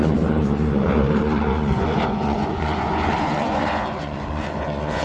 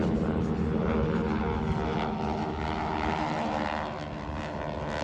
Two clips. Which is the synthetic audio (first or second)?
first